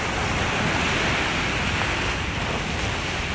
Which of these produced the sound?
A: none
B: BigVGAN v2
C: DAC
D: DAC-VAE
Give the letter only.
A